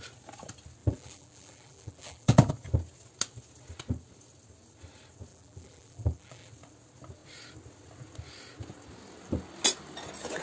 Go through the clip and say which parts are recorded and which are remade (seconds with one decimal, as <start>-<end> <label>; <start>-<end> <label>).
0.0-0.8 recorded; 0.8-2.5 remade; 2.5-5.3 recorded; 5.3-6.5 remade; 6.5-10.4 recorded